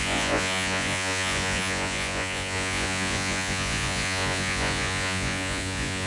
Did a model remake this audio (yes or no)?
yes